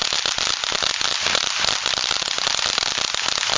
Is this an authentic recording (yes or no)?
yes